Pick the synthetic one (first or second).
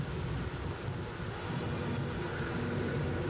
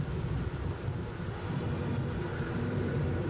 second